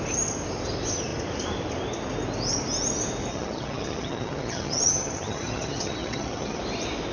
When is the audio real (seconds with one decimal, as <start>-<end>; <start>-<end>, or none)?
0.0-3.3; 6.6-7.1